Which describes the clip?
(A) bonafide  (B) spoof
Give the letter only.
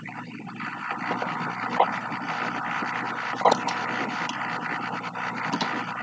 A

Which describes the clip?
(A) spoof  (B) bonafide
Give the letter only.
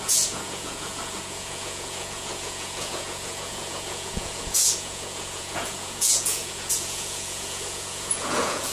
A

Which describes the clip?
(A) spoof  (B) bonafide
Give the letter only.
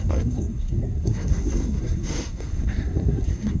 A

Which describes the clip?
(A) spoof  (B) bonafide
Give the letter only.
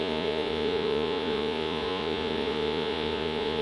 A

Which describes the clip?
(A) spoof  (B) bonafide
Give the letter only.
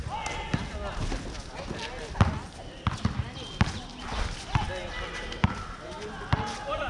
B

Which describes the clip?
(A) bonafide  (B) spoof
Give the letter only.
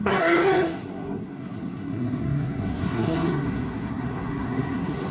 B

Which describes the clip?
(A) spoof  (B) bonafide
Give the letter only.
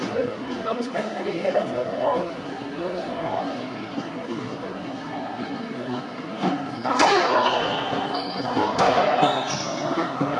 A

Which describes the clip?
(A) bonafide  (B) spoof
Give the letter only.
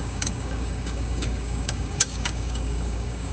B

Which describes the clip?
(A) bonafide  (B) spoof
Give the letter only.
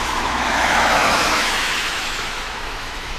B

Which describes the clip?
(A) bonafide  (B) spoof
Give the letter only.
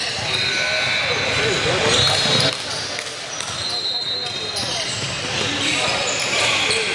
A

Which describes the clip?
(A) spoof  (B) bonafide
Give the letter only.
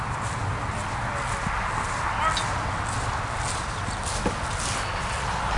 B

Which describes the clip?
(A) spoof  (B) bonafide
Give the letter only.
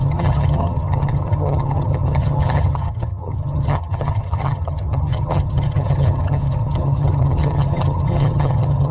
A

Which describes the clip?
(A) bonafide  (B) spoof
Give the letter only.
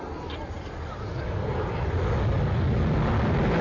A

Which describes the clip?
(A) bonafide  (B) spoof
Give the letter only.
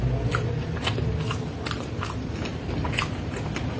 A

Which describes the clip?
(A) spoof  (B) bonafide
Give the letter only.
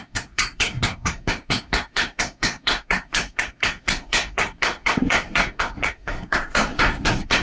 A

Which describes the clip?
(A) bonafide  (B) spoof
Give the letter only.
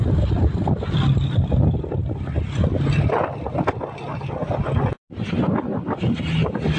A